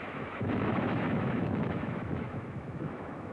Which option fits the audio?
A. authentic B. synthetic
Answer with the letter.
B